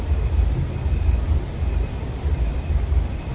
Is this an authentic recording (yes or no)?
yes